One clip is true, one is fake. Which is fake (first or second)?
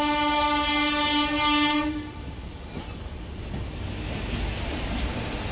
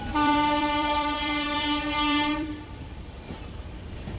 second